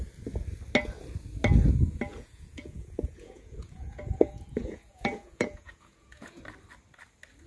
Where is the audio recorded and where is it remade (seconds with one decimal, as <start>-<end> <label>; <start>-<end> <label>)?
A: 0.0-2.1 recorded; 2.1-6.4 remade; 6.4-7.5 recorded